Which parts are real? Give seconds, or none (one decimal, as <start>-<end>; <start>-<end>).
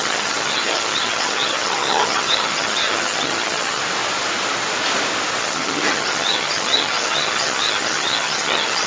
3.8-5.4